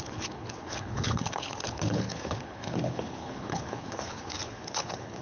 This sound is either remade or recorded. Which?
remade